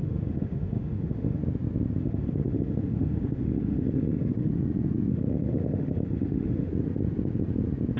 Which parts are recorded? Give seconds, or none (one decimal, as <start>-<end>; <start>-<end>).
1.4-2.0; 4.5-5.1; 6.7-8.0